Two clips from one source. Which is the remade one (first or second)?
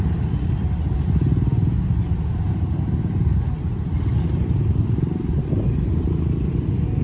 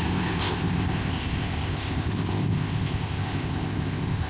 second